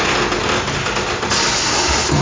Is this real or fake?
real